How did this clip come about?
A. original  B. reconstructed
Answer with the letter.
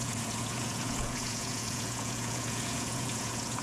B